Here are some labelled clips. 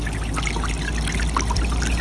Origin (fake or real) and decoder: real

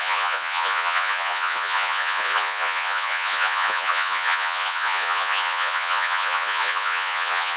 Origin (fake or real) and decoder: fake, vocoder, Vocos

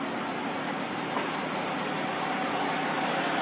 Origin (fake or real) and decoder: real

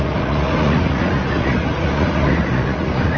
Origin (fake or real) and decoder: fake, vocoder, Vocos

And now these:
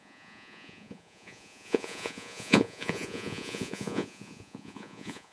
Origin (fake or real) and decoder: fake, vocoder, Vocos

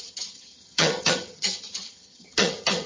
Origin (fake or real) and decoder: fake, vocoder, HiFi-GAN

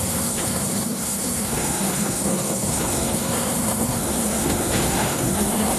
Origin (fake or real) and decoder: fake, codec, SNAC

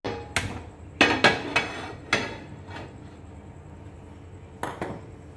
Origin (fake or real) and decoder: real